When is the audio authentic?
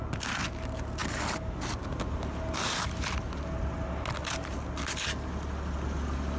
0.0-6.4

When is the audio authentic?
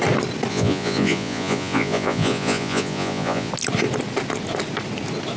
0.0-0.5; 3.5-5.4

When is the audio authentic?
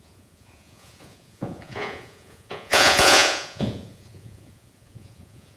none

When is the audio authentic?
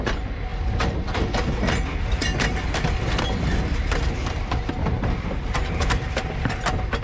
0.0-7.0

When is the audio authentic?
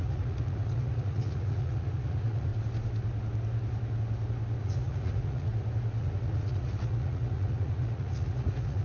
2.5-4.6; 5.5-6.0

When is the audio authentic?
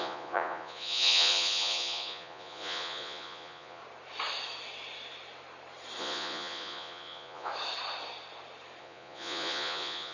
3.8-6.0; 7.5-8.8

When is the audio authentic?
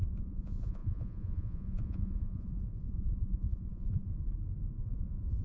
4.1-4.8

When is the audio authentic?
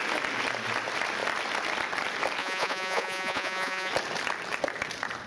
0.0-2.4; 3.9-5.3